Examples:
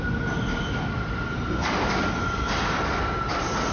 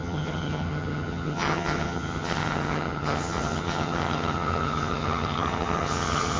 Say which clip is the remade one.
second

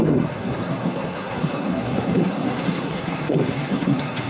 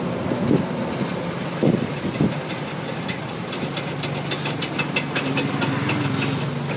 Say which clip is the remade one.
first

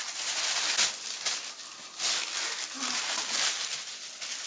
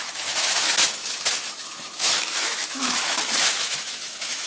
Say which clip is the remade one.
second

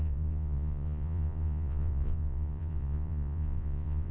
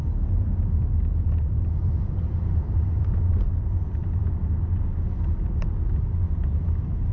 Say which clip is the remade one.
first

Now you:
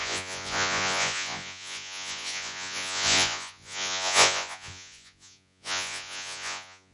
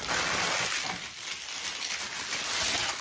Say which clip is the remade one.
first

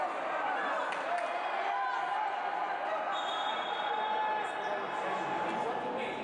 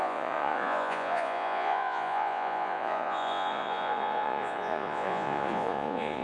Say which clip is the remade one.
second